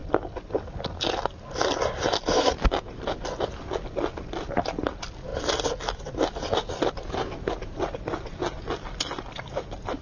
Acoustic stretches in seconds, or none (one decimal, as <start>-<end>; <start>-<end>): 0.0-10.0